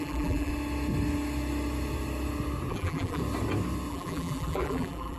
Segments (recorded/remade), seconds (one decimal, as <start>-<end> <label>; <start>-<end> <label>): 0.0-0.5 remade; 0.5-2.7 recorded; 2.7-3.2 remade; 3.2-3.9 recorded; 3.9-5.2 remade